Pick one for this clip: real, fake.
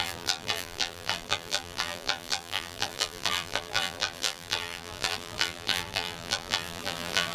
fake